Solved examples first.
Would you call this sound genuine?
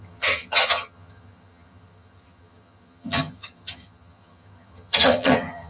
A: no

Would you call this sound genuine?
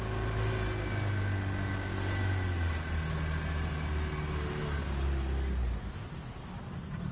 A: yes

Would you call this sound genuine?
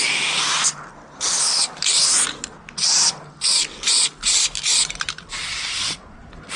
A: yes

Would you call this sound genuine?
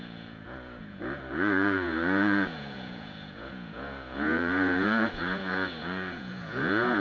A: no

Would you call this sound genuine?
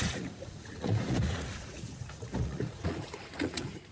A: no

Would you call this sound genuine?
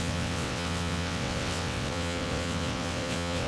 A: no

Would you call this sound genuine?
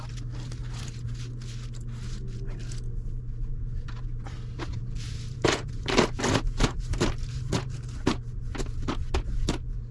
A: yes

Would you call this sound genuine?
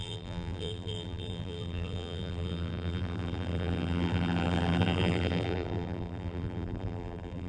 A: no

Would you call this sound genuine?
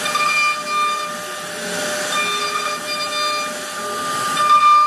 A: yes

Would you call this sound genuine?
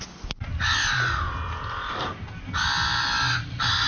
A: yes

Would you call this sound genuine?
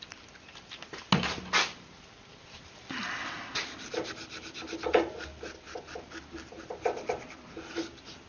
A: yes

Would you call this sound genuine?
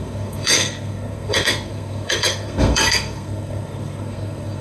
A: no